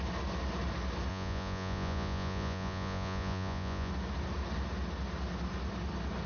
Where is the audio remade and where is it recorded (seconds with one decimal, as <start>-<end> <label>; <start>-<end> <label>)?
0.0-1.1 recorded; 1.1-3.9 remade; 3.9-6.3 recorded

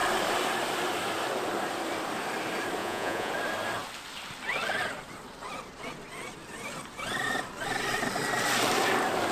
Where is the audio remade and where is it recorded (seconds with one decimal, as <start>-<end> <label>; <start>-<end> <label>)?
0.0-2.8 recorded; 2.8-3.3 remade; 3.3-9.3 recorded

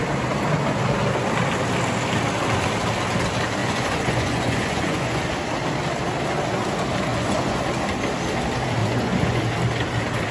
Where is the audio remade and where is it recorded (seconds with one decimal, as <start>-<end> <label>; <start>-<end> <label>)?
0.0-3.6 recorded; 3.6-5.2 remade; 5.2-7.1 recorded; 7.1-7.6 remade; 7.6-8.8 recorded; 8.8-9.4 remade; 9.4-10.3 recorded

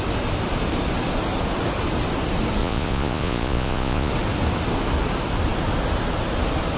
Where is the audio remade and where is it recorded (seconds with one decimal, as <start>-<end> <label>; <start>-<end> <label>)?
0.0-2.6 recorded; 2.6-4.1 remade; 4.1-6.8 recorded

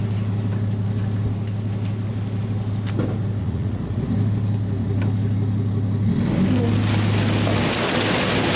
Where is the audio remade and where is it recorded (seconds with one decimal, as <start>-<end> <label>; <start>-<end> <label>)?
0.0-3.4 recorded; 3.4-4.0 remade; 4.0-8.6 recorded

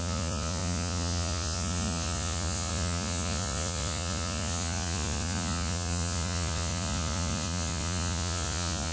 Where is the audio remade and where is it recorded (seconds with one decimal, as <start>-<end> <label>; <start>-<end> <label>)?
0.0-8.9 remade

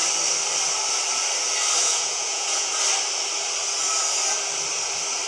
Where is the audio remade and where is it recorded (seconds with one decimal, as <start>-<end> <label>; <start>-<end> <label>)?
0.0-1.8 recorded; 1.8-2.7 remade; 2.7-5.3 recorded

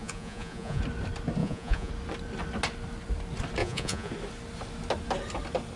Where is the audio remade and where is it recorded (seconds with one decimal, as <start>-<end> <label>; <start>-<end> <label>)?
0.0-0.8 remade; 0.8-1.4 recorded; 1.4-1.9 remade; 1.9-3.6 recorded; 3.6-4.1 remade; 4.1-5.8 recorded